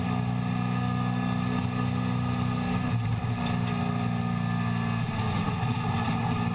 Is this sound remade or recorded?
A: recorded